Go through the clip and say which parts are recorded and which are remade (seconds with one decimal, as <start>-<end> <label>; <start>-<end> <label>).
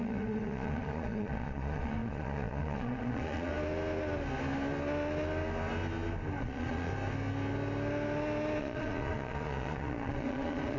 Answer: 0.0-3.5 remade; 3.5-6.4 recorded; 6.4-6.9 remade; 6.9-8.6 recorded; 8.6-10.8 remade